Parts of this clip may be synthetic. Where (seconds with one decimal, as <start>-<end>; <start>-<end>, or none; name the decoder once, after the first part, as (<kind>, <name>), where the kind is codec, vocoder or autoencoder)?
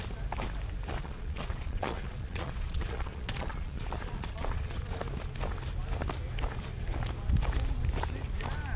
1.0-5.0 (vocoder, Vocos)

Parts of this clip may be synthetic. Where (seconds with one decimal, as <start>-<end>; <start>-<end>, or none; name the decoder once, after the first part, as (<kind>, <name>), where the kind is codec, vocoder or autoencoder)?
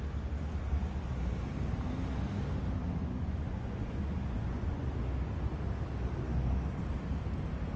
3.0-4.9 (vocoder, Vocos)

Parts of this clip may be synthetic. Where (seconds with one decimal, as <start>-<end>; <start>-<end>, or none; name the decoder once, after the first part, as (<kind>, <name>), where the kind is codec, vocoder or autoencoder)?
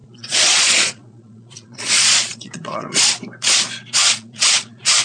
0.0-3.0 (vocoder, Vocos); 4.0-5.0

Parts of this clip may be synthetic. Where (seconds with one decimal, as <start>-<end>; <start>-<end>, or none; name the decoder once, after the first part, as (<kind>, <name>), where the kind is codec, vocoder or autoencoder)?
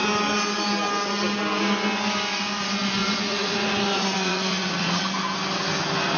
3.0-5.0 (vocoder, Vocos)